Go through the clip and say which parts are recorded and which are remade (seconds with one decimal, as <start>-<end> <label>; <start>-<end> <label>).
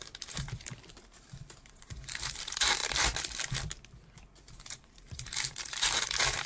0.0-2.8 remade; 2.8-4.4 recorded; 4.4-6.5 remade